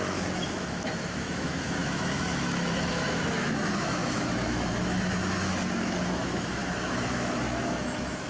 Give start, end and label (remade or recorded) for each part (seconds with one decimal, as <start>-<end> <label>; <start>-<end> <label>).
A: 0.0-8.3 remade